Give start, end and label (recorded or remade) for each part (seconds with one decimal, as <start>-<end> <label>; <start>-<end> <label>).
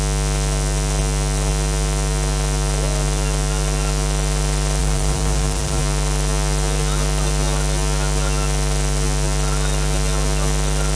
0.0-4.8 recorded; 4.8-5.8 remade; 5.8-11.0 recorded